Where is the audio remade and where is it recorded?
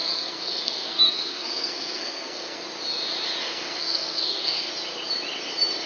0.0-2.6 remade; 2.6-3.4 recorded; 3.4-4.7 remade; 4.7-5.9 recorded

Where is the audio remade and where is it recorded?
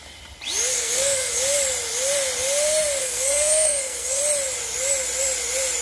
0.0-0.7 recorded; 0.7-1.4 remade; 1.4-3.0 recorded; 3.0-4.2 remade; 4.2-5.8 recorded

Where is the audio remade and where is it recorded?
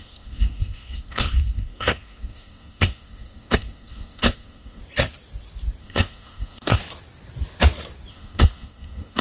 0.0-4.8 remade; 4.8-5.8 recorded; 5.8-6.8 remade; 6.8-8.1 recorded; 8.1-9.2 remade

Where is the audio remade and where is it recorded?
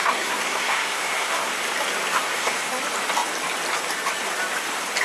0.0-1.5 remade; 1.5-2.1 recorded; 2.1-2.7 remade; 2.7-5.0 recorded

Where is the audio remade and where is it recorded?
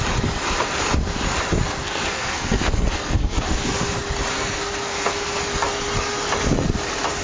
0.0-1.8 recorded; 1.8-3.8 remade; 3.8-4.3 recorded; 4.3-5.4 remade; 5.4-7.2 recorded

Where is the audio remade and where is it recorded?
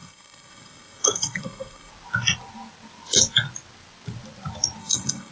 0.0-1.9 remade; 1.9-4.8 recorded; 4.8-5.3 remade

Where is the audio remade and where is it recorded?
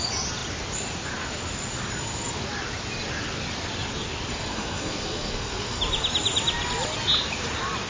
0.0-4.3 recorded; 4.3-5.8 remade; 5.8-7.9 recorded